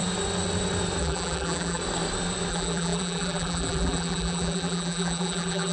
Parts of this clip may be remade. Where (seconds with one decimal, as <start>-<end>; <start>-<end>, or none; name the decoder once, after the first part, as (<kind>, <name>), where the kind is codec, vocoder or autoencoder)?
1.0-1.8 (vocoder, BigVGAN v2); 2.5-5.7